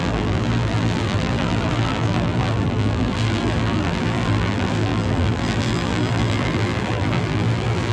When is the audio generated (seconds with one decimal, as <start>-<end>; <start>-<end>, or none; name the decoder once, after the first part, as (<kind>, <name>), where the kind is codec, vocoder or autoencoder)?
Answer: 0.0-7.9 (vocoder, BigVGAN v2)